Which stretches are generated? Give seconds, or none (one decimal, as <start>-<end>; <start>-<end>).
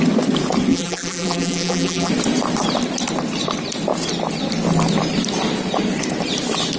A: 0.7-2.1